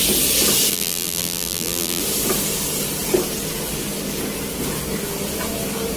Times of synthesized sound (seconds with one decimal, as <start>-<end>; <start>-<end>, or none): 0.7-2.0

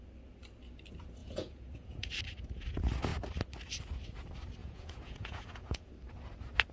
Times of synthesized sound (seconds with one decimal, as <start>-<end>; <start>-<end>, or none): 1.2-2.1; 4.6-5.9

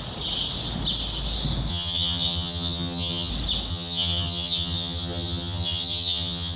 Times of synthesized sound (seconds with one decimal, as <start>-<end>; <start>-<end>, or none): 1.7-3.3; 3.7-6.6

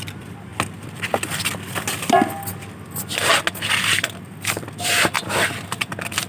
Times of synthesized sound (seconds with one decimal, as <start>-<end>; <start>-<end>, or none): none

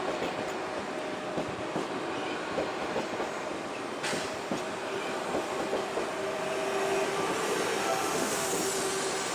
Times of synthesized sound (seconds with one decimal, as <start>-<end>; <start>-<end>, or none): 7.8-8.5

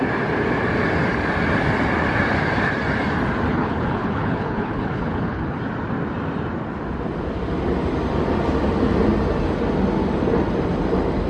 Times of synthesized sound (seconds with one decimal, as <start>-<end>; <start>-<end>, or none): 3.5-5.6

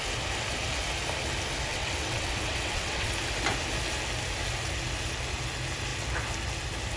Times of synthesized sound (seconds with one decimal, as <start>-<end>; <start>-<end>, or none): 1.7-3.1